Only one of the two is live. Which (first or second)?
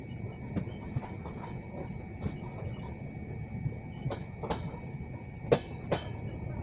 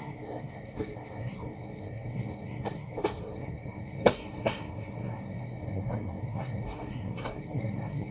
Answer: first